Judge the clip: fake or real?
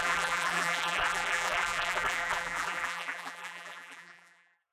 fake